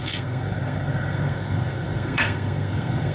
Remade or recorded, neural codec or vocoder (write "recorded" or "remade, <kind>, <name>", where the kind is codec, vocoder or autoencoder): remade, codec, SNAC